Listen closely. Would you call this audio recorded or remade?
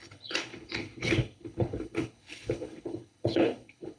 remade